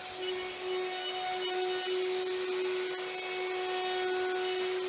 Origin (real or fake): real